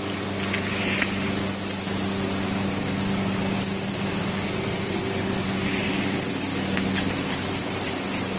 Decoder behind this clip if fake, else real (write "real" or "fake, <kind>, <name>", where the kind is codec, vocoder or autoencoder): real